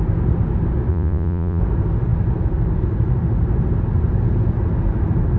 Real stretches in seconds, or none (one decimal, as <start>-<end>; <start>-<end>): 0.0-0.9; 1.6-5.4